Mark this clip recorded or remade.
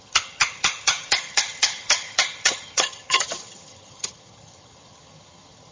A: remade